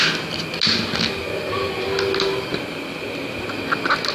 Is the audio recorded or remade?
recorded